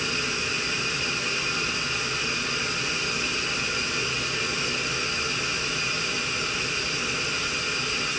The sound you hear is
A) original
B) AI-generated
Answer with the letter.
A